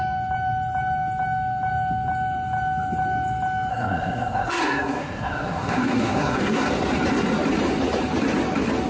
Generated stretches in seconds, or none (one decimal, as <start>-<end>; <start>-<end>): 3.7-6.7